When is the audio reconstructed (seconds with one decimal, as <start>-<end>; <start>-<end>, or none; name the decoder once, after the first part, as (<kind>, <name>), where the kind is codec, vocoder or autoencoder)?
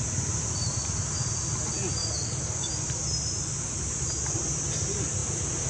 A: 2.0-2.7 (codec, DAC)